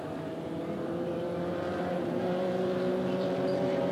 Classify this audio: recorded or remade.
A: remade